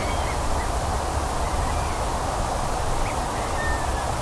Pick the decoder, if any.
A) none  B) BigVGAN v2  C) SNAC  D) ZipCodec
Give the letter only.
A